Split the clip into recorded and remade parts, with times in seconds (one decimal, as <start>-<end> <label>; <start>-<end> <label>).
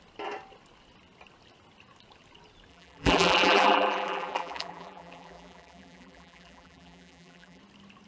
0.0-2.7 recorded; 2.7-7.6 remade; 7.6-8.1 recorded